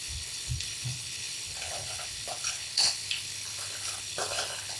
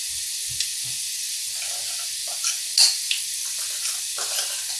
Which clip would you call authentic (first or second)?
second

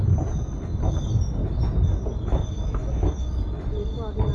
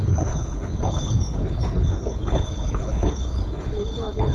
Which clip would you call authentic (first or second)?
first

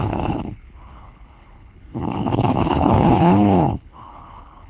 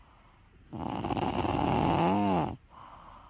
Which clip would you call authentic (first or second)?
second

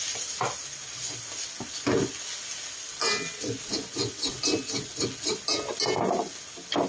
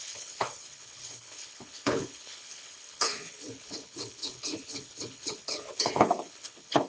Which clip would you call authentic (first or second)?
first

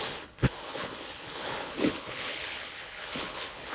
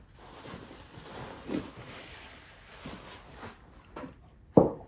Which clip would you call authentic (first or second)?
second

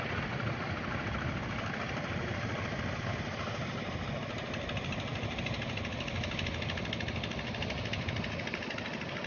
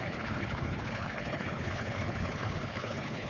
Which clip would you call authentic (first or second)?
first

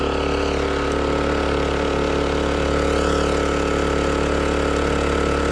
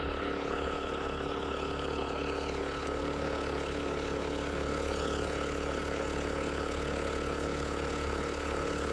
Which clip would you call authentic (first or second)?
first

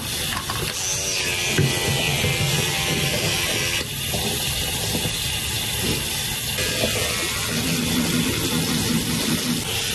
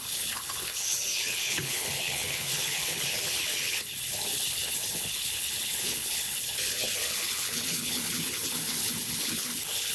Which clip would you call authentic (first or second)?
first